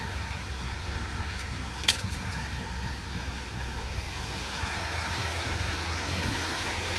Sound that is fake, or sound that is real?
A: fake